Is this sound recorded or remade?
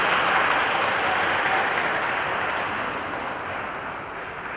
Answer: recorded